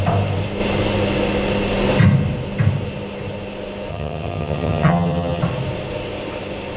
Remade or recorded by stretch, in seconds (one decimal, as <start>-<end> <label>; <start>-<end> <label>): 0.0-3.9 recorded; 3.9-5.4 remade; 5.4-6.8 recorded